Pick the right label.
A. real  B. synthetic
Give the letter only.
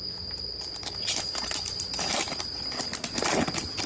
A